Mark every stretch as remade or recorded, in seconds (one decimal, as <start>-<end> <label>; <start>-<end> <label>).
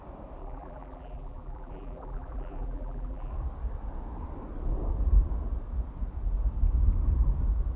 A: 0.0-0.4 recorded; 0.4-3.3 remade; 3.3-7.8 recorded